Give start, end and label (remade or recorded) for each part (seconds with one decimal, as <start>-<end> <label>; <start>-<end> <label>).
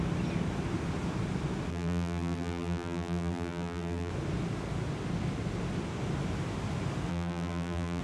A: 0.0-1.7 recorded; 1.7-4.1 remade; 4.1-7.1 recorded; 7.1-8.0 remade